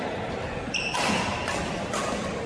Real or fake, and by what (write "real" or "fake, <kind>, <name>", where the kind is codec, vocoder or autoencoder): real